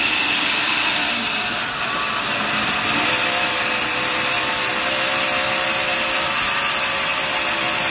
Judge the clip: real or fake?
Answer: real